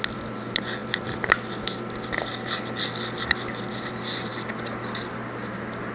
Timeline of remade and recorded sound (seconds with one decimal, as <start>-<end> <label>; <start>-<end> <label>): 0.0-5.9 recorded